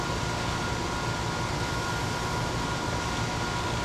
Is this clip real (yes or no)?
yes